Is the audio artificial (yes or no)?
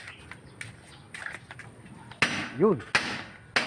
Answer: no